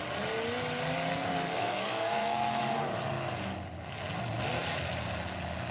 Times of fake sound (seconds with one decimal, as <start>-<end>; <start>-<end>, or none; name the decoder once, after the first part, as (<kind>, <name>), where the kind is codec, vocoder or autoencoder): 1.1-2.6 (codec, SNAC)